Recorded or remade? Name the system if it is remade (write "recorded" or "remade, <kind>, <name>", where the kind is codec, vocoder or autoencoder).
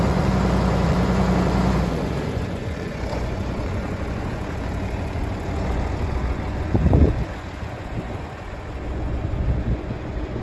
remade, vocoder, Vocos